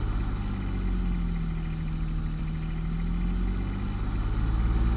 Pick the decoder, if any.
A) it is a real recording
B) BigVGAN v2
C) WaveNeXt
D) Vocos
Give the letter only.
A